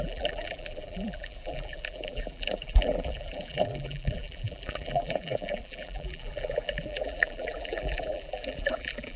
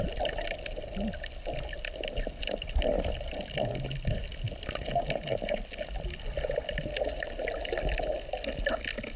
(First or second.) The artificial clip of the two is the first